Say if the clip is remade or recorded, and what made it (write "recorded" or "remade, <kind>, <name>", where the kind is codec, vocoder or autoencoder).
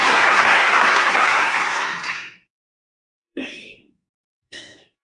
remade, codec, SNAC